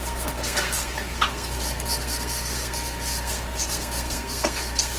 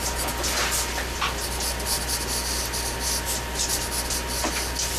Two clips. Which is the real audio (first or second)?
second